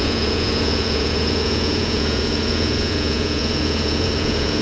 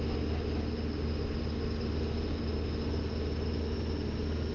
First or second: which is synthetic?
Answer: first